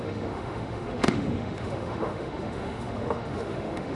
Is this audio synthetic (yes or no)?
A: yes